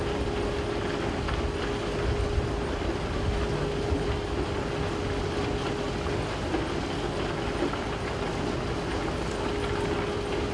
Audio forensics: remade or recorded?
recorded